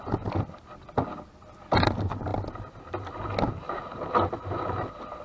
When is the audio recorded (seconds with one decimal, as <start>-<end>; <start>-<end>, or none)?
0.0-5.2